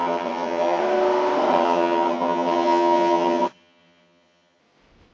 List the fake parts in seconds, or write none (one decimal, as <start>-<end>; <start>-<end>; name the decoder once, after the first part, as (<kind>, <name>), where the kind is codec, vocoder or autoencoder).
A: 0.0-0.8 (vocoder, HiFi-GAN); 1.5-4.6